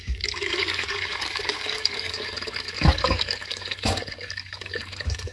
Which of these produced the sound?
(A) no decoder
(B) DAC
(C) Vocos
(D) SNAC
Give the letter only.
B